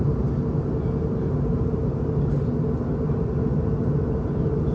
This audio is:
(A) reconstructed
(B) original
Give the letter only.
B